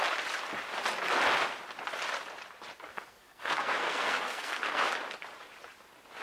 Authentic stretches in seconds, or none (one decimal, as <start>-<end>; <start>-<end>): 0.0-2.9; 4.9-6.2